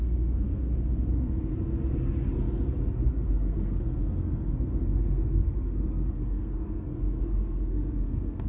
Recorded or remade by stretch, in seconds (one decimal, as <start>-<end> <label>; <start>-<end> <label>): 0.0-1.5 remade; 1.5-3.1 recorded; 3.1-8.5 remade